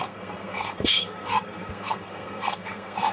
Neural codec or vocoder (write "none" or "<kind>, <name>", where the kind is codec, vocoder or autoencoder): codec, SNAC